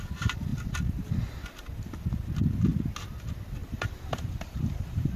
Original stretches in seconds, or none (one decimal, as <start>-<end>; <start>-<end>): 0.0-3.6